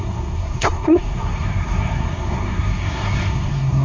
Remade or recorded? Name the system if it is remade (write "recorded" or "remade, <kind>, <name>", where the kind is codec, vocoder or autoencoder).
remade, codec, SNAC